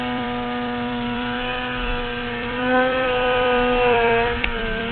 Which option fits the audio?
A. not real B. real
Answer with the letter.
A